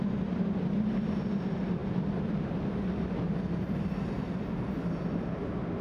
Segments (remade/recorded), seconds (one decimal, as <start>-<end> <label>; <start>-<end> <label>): 0.0-5.8 recorded